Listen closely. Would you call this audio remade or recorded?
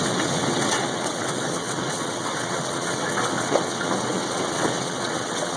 remade